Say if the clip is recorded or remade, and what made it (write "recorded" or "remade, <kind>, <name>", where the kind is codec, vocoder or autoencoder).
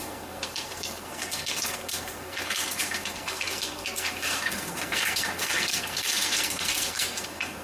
remade, codec, SNAC